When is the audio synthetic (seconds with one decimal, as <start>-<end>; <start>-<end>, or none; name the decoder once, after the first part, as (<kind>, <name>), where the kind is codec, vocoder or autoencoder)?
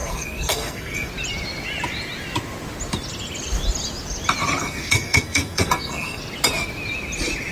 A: 0.0-1.1 (codec, SNAC); 4.6-6.2